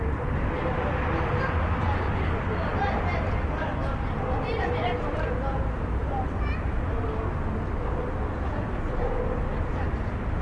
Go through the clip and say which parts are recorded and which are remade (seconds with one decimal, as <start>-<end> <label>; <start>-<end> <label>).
0.0-10.4 recorded